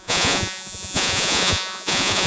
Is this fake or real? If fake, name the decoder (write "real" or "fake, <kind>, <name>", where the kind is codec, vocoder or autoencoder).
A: fake, vocoder, Vocos